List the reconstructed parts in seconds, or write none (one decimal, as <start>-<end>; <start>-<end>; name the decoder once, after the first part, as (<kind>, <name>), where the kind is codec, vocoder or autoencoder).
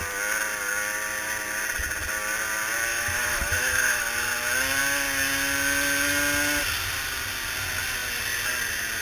2.9-4.0 (autoencoder, DAC-VAE)